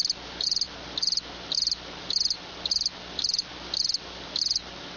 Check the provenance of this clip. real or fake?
real